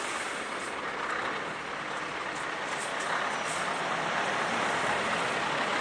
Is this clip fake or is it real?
real